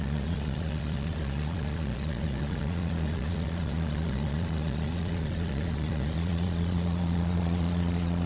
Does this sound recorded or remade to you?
remade